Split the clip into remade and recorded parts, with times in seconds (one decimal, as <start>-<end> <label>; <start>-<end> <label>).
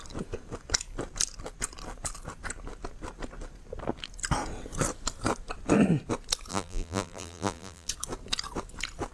0.0-6.5 recorded; 6.5-7.9 remade; 7.9-9.1 recorded